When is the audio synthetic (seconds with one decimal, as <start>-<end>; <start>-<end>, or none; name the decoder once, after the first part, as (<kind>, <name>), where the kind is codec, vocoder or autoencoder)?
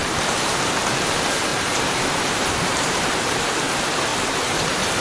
0.0-0.7 (vocoder, BigVGAN v2); 1.5-3.1; 4.1-5.0